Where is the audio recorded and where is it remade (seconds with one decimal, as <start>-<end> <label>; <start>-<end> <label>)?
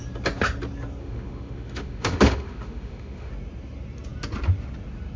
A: 0.0-1.0 recorded; 1.0-3.3 remade; 3.3-5.2 recorded